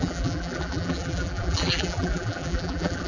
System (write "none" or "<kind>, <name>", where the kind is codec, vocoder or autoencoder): vocoder, BigVGAN v2